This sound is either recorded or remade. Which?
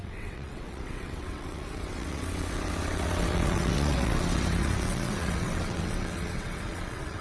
remade